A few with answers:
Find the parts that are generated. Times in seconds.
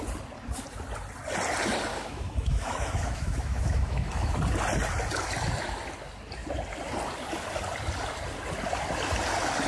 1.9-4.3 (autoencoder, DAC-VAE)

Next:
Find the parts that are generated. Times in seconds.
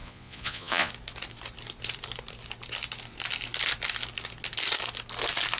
0.0-0.9 (vocoder, Vocos)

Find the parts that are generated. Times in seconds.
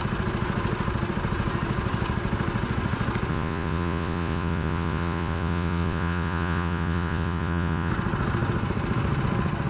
3.3-7.9 (vocoder, Vocos)